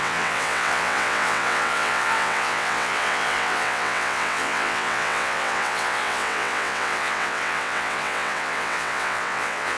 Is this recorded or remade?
remade